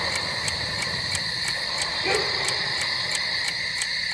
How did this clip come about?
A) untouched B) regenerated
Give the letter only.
A